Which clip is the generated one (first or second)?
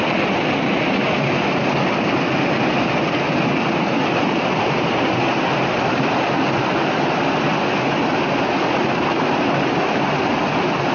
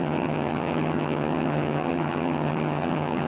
second